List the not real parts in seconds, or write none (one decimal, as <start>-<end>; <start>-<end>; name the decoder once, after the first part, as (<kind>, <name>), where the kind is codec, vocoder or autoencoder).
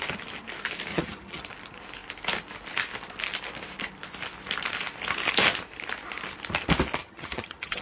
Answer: 0.9-1.4 (vocoder, HiFi-GAN); 7.0-7.8